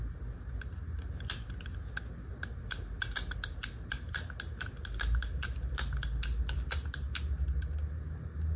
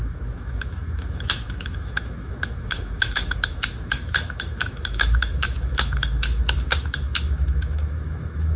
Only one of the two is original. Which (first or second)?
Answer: first